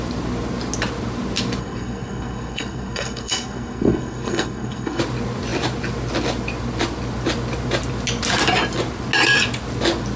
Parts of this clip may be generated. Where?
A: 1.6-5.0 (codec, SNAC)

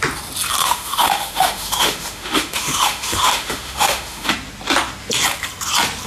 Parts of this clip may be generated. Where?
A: 0.6-4.3 (autoencoder, DAC-VAE)

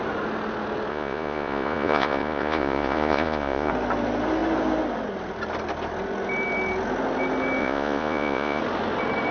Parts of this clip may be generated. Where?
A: 0.9-3.7 (vocoder, Vocos); 7.6-8.6